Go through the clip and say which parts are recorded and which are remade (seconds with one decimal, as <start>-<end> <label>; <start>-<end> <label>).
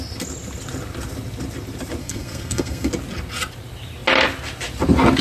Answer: 0.0-2.0 recorded; 2.0-2.9 remade; 2.9-5.2 recorded